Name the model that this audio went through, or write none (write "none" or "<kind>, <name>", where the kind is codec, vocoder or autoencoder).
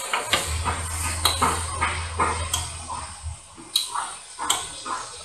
none